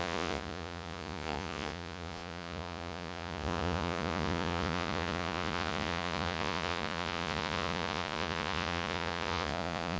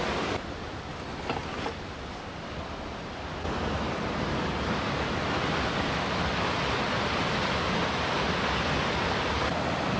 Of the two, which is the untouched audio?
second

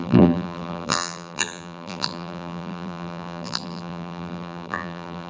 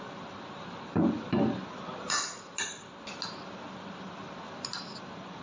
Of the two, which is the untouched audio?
second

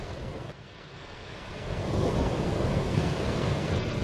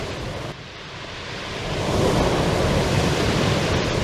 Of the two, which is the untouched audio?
second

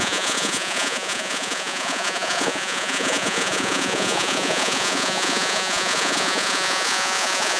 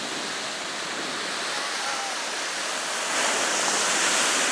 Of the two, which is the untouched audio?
second